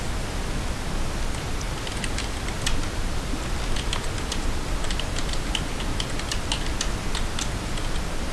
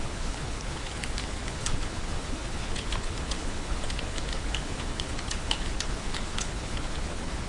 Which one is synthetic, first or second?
second